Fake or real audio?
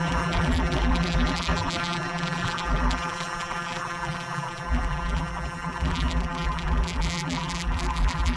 fake